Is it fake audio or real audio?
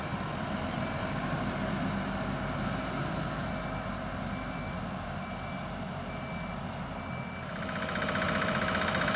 real